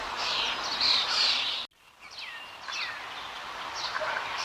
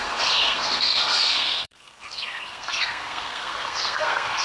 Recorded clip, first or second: first